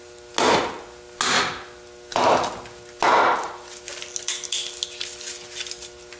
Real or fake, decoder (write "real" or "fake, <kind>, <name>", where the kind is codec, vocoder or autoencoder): real